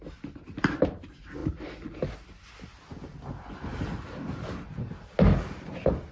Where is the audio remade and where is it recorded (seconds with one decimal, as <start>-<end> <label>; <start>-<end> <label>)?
0.0-6.1 recorded